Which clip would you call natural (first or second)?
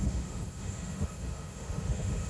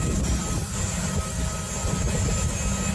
second